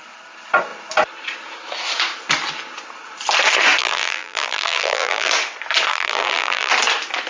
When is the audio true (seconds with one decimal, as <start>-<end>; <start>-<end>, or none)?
0.0-3.8; 5.3-5.9; 6.7-7.3